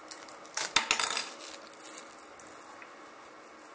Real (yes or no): yes